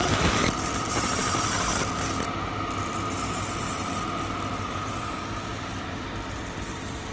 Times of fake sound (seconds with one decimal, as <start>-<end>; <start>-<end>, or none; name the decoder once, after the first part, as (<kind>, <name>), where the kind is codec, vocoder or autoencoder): 0.0-1.2 (vocoder, BigVGAN v2); 5.5-7.1